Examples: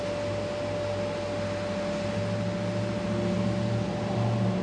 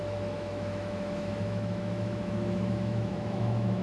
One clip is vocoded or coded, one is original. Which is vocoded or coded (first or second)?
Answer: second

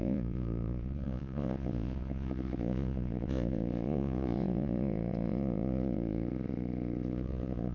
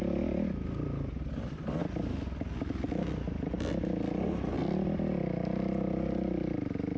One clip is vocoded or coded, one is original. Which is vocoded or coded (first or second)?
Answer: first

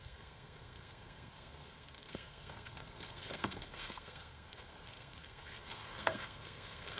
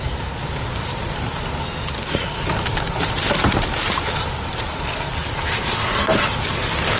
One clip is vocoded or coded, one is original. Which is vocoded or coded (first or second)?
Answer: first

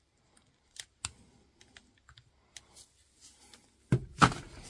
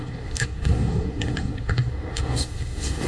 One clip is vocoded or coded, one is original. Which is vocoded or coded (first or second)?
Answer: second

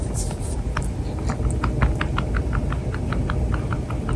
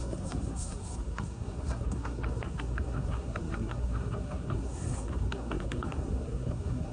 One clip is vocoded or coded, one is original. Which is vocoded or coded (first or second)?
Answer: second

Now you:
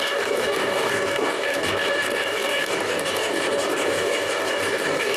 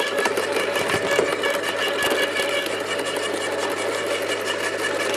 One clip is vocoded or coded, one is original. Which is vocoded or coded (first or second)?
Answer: first